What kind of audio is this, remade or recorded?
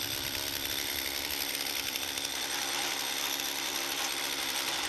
remade